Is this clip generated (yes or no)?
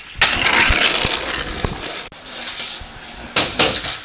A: no